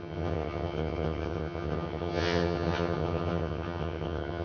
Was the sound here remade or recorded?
remade